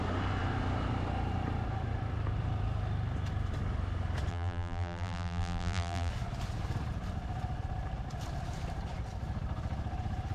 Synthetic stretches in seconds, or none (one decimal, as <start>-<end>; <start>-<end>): 4.3-6.1